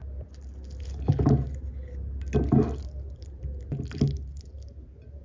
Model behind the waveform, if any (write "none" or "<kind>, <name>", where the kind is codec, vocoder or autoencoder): none